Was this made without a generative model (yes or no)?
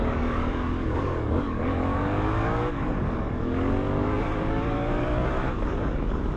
no